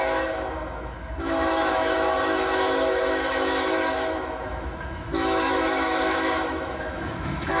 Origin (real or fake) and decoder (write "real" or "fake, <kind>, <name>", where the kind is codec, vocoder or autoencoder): fake, autoencoder, DAC-VAE